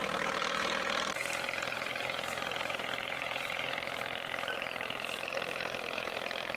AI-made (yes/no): yes